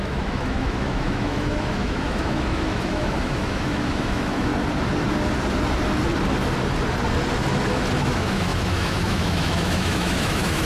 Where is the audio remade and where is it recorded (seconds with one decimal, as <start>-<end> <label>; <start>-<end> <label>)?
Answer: 0.0-4.5 remade; 4.5-8.0 recorded; 8.0-10.7 remade